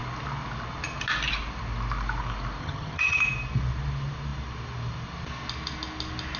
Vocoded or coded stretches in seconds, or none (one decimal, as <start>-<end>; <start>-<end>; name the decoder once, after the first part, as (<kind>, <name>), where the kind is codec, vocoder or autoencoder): 2.6-3.2 (vocoder, HiFi-GAN)